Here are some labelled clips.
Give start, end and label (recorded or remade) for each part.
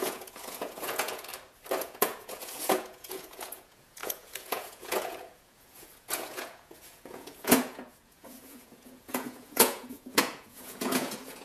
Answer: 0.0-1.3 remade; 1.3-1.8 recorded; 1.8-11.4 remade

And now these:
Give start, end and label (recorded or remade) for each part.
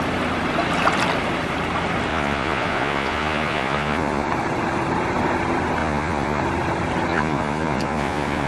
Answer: 0.0-2.1 recorded; 2.1-4.3 remade; 4.3-5.8 recorded; 5.8-6.4 remade; 6.4-7.1 recorded; 7.1-8.5 remade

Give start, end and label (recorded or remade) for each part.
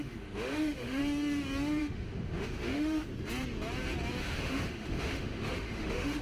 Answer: 0.0-1.0 remade; 1.0-1.8 recorded; 1.8-3.1 remade; 3.1-4.2 recorded; 4.2-6.2 remade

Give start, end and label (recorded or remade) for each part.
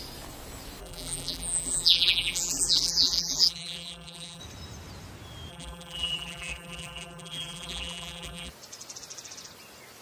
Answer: 0.0-0.8 recorded; 0.8-4.4 remade; 4.4-5.5 recorded; 5.5-8.5 remade; 8.5-10.0 recorded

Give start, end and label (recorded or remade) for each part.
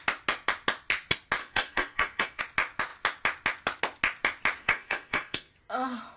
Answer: 0.0-1.4 recorded; 1.4-2.4 remade; 2.4-4.6 recorded; 4.6-5.5 remade; 5.5-6.2 recorded